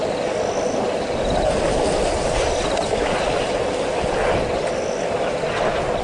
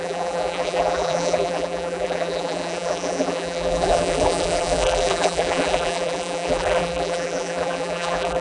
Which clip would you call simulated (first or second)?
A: second